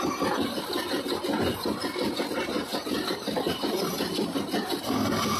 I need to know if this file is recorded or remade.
recorded